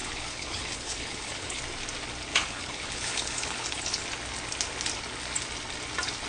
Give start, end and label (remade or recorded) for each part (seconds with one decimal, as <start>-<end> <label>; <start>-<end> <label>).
0.0-1.6 remade; 1.6-2.3 recorded; 2.3-4.0 remade; 4.0-6.3 recorded